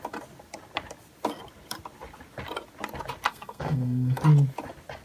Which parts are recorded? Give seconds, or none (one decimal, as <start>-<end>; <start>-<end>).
0.0-3.3; 4.2-5.0